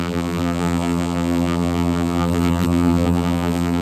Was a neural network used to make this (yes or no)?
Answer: yes